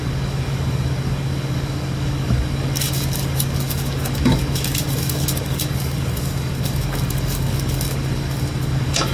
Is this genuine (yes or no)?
no